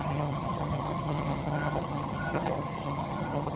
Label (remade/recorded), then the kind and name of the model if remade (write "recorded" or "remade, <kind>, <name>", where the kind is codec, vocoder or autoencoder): remade, vocoder, HiFi-GAN